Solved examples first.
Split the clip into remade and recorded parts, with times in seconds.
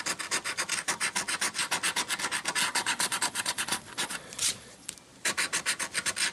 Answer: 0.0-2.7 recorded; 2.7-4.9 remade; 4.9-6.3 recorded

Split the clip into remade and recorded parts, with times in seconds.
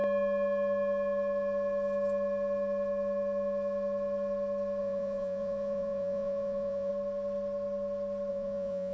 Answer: 0.0-4.8 recorded; 4.8-6.9 remade; 6.9-8.3 recorded; 8.3-8.9 remade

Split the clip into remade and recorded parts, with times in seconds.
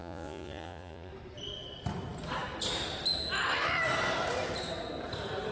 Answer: 0.0-1.1 remade; 1.1-5.5 recorded